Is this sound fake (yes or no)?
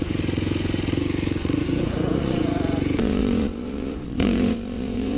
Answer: yes